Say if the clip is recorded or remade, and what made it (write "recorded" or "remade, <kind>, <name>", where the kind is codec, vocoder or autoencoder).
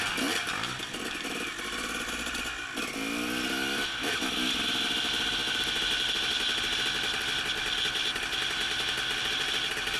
recorded